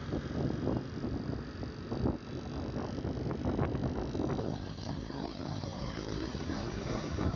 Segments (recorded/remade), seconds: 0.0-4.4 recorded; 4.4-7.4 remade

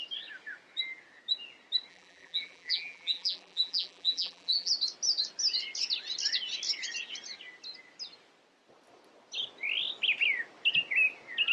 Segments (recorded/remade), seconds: 0.0-1.9 recorded; 1.9-4.7 remade; 4.7-11.5 recorded

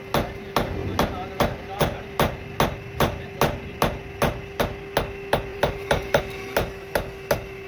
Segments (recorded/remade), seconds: 0.0-5.5 recorded; 5.5-6.2 remade; 6.2-7.7 recorded